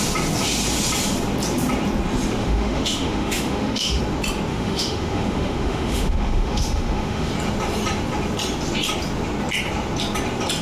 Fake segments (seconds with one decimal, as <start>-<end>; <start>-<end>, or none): 2.4-4.0; 4.5-7.3